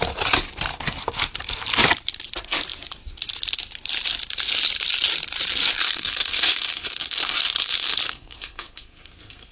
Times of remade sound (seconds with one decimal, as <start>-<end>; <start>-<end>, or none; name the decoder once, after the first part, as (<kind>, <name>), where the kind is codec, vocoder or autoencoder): 5.8-9.5 (codec, SNAC)